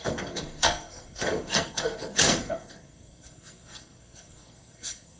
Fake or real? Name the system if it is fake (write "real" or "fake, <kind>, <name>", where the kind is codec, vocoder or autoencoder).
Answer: fake, codec, SNAC